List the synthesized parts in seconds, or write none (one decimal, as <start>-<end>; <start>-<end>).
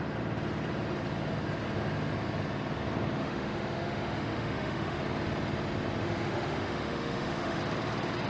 3.2-5.0; 6.0-7.6